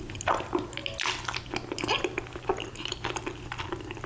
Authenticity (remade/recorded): recorded